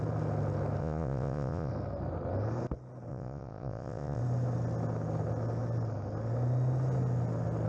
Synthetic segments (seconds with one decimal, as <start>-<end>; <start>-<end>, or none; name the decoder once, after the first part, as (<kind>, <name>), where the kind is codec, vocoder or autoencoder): 0.8-1.7 (vocoder, Vocos); 3.1-4.2